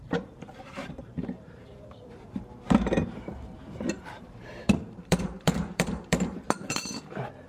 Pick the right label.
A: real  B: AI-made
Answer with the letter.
B